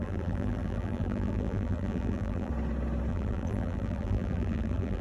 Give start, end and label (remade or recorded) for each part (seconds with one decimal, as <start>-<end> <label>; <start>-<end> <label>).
0.0-2.5 remade; 2.5-3.1 recorded; 3.1-5.0 remade